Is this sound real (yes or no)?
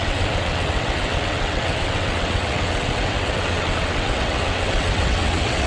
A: no